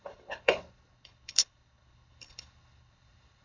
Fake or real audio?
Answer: fake